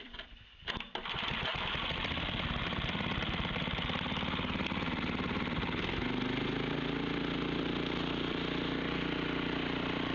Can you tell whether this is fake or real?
fake